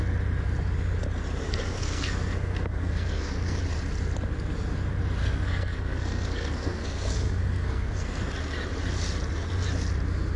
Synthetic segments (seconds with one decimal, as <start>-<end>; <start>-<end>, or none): 1.4-3.6; 5.2-8.3

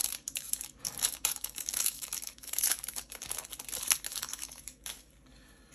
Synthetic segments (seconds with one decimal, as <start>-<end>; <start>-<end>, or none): 0.0-3.4; 4.1-5.1